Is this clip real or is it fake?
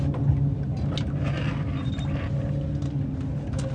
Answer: real